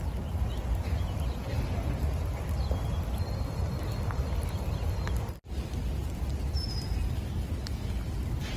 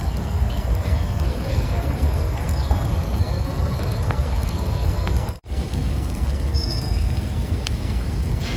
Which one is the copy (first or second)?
second